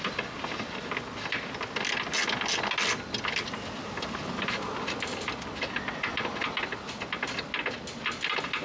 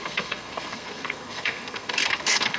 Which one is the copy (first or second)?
second